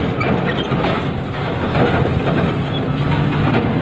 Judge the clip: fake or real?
real